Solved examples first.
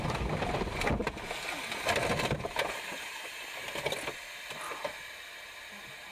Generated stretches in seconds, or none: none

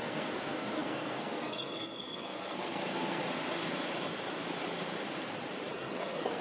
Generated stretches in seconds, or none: 0.0-3.2 (codec, SNAC); 5.7-6.4

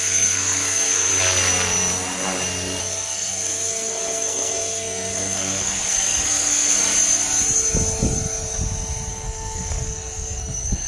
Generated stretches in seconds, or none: 0.0-1.1 (codec, SNAC); 2.8-6.8; 9.1-10.9

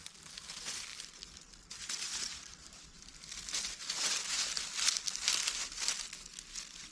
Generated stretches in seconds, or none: none

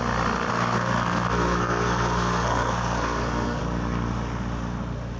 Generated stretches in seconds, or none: 0.5-3.6 (codec, SNAC)

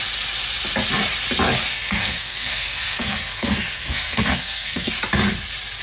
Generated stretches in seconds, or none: 1.7-4.9 (codec, SNAC)

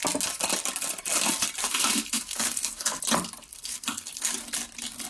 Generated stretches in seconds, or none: 1.6-3.0 (codec, SNAC); 3.5-4.3

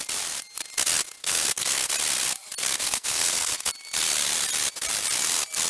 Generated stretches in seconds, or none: 1.2-1.9 (codec, SNAC); 2.6-3.7